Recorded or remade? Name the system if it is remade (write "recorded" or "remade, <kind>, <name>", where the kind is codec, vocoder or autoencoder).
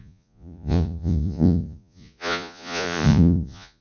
remade, vocoder, Vocos